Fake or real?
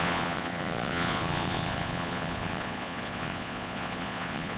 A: fake